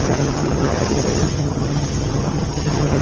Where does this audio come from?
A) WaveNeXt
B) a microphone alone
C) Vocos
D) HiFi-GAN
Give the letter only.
D